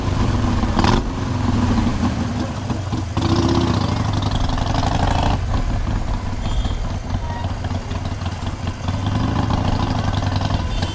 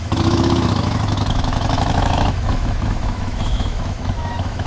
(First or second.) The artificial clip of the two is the second